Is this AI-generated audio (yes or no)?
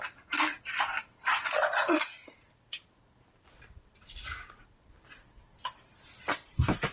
no